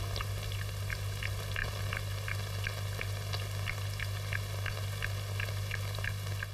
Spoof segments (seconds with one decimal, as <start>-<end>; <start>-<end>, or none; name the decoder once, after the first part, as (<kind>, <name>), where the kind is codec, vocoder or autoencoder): none